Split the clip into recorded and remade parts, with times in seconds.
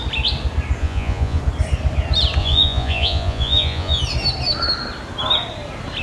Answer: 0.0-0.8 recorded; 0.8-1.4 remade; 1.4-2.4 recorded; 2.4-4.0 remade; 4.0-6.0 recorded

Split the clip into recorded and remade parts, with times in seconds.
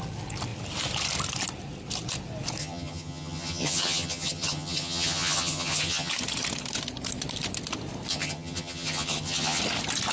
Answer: 0.0-2.6 recorded; 2.6-6.1 remade; 6.1-8.1 recorded; 8.1-9.6 remade; 9.6-10.1 recorded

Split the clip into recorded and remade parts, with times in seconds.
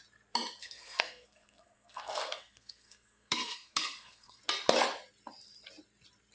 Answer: 0.0-0.6 recorded; 0.6-4.4 remade; 4.4-6.3 recorded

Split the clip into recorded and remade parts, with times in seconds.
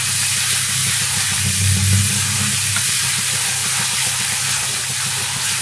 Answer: 0.0-5.6 recorded